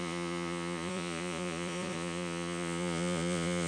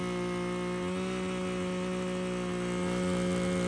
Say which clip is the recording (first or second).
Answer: second